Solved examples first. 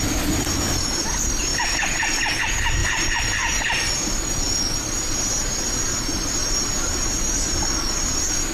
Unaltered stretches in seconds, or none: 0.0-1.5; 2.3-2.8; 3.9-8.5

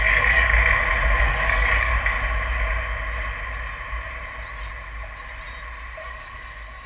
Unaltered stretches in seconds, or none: 0.5-1.2; 1.9-6.0

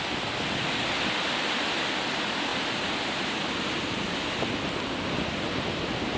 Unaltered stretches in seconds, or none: 0.0-6.2

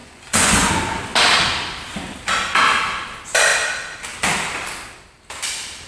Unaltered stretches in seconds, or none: 0.7-5.9

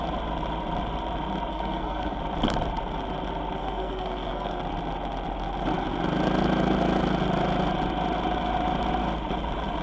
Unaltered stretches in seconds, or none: 0.0-1.5; 2.2-3.6; 4.6-9.8